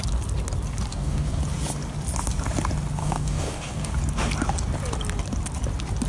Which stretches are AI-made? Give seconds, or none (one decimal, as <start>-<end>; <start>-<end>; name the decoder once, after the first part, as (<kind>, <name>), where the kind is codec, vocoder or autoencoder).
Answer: 0.9-1.4 (codec, DAC); 3.0-3.9